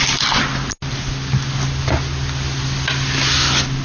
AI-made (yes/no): no